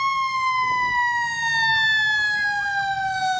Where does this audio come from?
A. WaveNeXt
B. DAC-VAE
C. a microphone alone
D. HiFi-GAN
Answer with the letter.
C